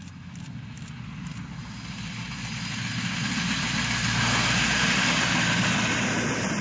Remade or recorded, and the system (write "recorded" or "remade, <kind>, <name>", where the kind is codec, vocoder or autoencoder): recorded